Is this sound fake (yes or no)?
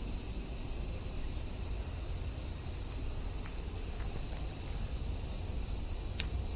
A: no